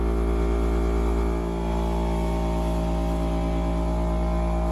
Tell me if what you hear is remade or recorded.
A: recorded